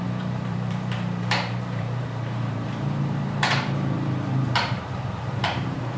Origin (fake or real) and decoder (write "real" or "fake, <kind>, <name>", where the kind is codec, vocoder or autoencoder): fake, vocoder, BigVGAN v2